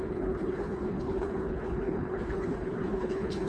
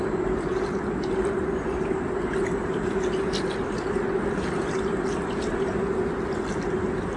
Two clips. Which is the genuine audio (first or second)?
second